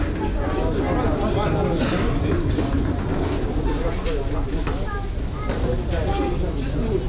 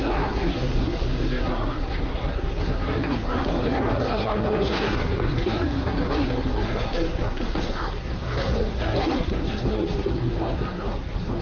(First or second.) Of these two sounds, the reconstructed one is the second